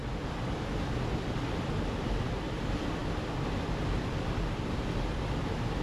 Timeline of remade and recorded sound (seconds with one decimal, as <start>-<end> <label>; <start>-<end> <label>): 0.0-5.8 recorded